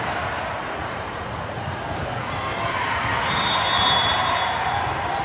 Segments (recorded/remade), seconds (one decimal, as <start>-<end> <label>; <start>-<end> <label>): 0.0-0.6 recorded; 0.6-1.8 remade; 1.8-5.2 recorded